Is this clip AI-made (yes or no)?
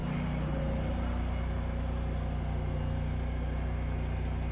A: no